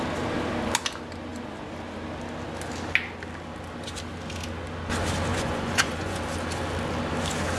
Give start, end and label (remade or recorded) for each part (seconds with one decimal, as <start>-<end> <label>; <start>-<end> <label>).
0.0-5.3 recorded; 5.3-6.2 remade; 6.2-7.6 recorded